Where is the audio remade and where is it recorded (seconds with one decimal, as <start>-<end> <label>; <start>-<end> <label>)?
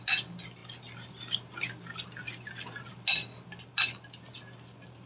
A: 0.0-5.1 recorded